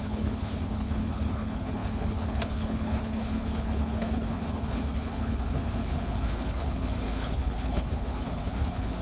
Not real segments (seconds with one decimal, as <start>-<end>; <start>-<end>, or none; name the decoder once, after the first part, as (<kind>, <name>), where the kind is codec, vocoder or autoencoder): 0.0-9.0 (codec, HILCodec)